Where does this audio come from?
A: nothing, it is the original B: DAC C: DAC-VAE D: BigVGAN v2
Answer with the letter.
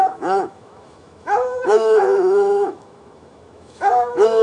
C